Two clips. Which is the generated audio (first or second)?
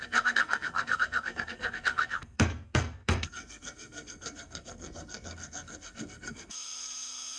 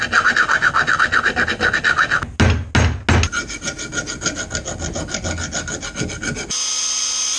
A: first